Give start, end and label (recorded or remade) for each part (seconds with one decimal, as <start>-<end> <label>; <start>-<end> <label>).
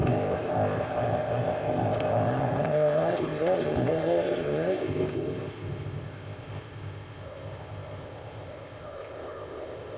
0.0-10.0 remade